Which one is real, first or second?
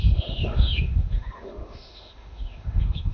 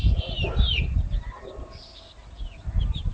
second